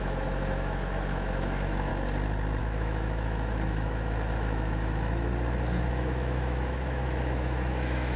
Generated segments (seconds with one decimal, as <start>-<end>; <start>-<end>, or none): 0.0-1.9; 2.6-5.3; 5.9-8.2